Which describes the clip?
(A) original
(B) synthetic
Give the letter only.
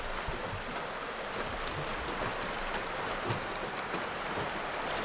A